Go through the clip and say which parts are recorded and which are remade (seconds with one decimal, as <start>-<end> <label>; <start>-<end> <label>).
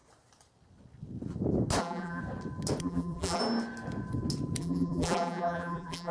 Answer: 0.0-1.8 recorded; 1.8-2.2 remade; 2.2-2.8 recorded; 2.8-3.4 remade; 3.4-4.6 recorded; 4.6-6.1 remade